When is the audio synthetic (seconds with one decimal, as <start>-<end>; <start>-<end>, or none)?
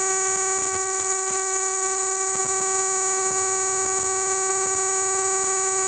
0.6-2.4